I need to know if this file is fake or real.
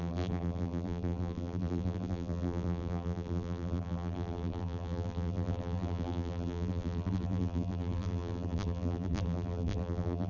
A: fake